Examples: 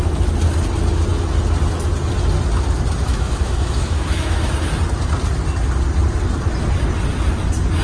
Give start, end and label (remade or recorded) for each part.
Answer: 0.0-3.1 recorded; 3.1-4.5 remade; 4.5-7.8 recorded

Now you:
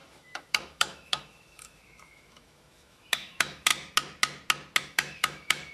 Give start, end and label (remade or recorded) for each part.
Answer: 0.0-3.7 remade; 3.7-4.8 recorded; 4.8-5.7 remade

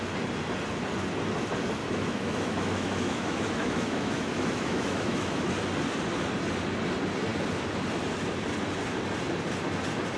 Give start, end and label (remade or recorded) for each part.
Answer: 0.0-1.8 recorded; 1.8-5.5 remade; 5.5-10.2 recorded

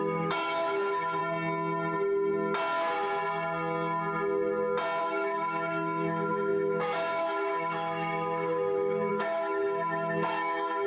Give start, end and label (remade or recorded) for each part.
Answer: 0.0-1.2 remade; 1.2-5.0 recorded; 5.0-10.9 remade

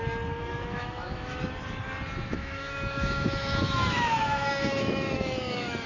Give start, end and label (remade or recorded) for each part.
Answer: 0.0-0.4 recorded; 0.4-1.4 remade; 1.4-2.2 recorded; 2.2-5.9 remade

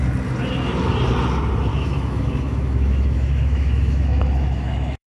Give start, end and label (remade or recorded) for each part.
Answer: 0.0-1.7 recorded; 1.7-5.1 remade

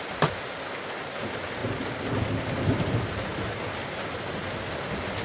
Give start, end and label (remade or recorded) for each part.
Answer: 0.0-5.2 recorded

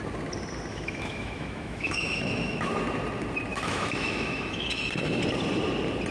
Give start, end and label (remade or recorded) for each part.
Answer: 0.0-0.7 recorded; 0.7-2.8 remade; 2.8-3.5 recorded; 3.5-4.8 remade; 4.8-6.1 recorded